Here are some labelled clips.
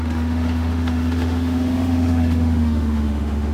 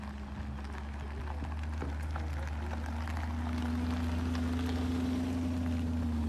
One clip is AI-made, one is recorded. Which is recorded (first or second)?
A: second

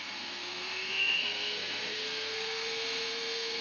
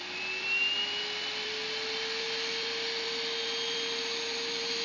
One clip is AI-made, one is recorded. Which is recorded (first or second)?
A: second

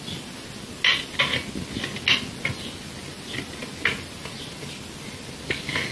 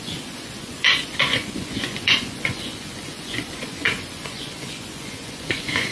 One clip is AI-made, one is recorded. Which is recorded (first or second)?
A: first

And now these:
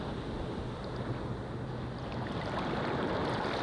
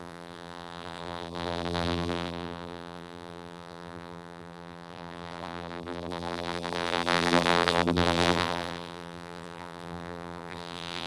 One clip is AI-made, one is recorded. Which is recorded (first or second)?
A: first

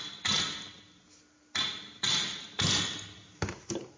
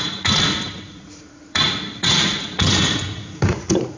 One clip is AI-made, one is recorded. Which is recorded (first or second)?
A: first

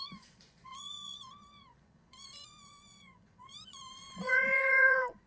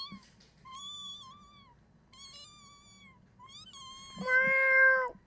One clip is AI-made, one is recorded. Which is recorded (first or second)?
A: second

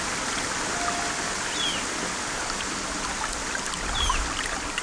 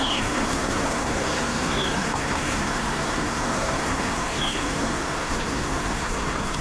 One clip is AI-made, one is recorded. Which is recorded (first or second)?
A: first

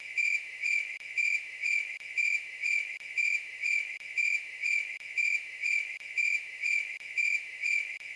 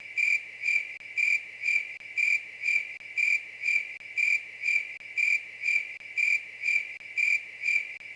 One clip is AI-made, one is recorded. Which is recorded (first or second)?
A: second